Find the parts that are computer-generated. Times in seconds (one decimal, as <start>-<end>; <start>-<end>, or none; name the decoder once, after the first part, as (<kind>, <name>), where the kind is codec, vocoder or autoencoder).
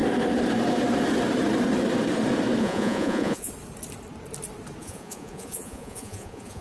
2.6-3.5 (vocoder, Vocos); 4.8-6.6